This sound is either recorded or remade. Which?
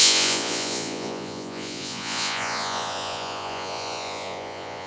remade